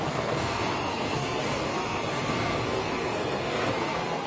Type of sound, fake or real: fake